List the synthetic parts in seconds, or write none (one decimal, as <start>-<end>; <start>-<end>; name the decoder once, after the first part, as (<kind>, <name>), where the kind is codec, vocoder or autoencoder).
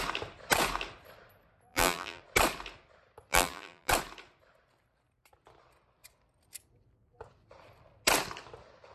1.7-2.2 (vocoder, BigVGAN v2); 3.3-3.9